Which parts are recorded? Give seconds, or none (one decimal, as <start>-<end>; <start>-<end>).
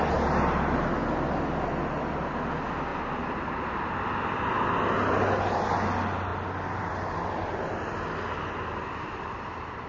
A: 0.0-9.9